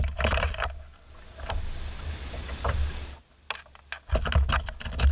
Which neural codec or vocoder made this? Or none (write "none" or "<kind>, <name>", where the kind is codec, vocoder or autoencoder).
none